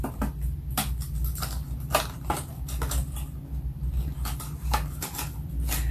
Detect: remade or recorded recorded